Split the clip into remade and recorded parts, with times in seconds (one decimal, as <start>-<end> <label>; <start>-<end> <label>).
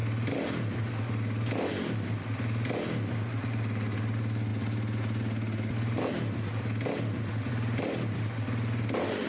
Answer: 0.0-9.3 recorded